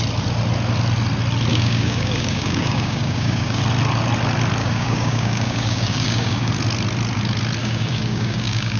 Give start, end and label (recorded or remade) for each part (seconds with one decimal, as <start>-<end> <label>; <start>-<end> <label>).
0.0-1.5 recorded; 1.5-3.6 remade; 3.6-4.6 recorded; 4.6-6.5 remade; 6.5-7.6 recorded; 7.6-8.8 remade